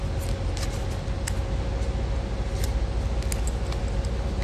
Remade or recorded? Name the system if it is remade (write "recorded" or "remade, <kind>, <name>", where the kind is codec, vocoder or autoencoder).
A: recorded